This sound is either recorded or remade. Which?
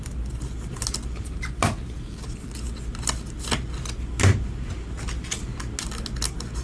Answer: recorded